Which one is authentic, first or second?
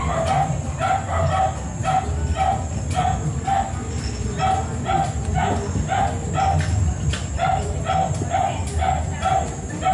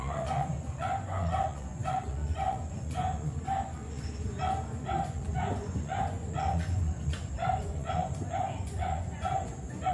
first